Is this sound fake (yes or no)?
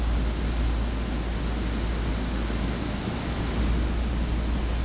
no